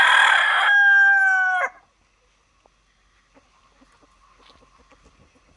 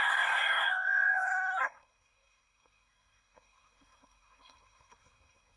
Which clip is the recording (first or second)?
first